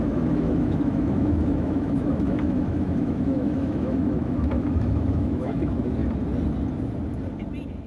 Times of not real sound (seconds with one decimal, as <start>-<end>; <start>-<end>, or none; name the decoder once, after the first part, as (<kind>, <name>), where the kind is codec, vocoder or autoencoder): 0.0-6.0 (autoencoder, DAC-VAE)

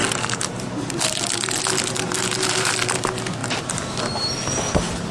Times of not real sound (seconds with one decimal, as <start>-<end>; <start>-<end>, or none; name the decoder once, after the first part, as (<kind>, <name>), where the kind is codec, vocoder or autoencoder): 3.4-4.5 (vocoder, BigVGAN v2)

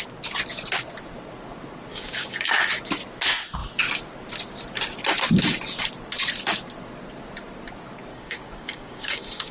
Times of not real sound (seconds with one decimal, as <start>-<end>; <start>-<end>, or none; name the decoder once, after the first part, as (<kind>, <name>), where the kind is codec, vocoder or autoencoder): 1.9-2.8 (codec, DAC); 8.1-9.5

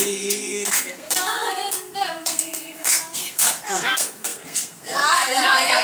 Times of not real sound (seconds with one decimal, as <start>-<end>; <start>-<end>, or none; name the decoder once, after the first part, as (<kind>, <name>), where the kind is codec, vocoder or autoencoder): 0.0-5.8 (codec, SNAC)